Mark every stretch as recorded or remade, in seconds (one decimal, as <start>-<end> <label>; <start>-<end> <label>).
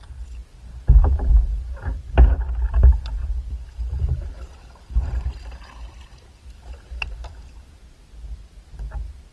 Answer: 0.0-9.3 recorded